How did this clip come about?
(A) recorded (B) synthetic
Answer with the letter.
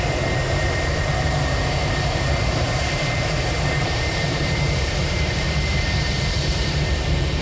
B